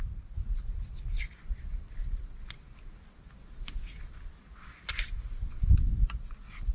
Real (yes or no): yes